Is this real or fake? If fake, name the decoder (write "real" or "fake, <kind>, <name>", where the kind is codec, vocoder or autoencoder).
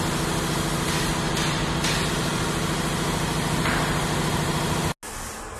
real